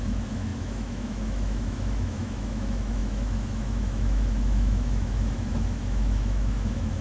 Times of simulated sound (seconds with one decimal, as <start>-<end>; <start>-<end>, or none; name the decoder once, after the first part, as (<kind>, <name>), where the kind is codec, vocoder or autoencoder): 0.0-7.0 (autoencoder, DAC-VAE)

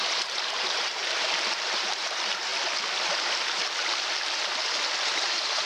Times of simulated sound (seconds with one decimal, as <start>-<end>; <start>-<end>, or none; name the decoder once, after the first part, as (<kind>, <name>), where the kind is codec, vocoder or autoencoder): 0.0-2.5 (vocoder, BigVGAN v2); 4.6-5.7